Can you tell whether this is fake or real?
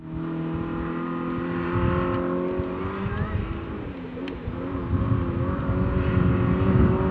real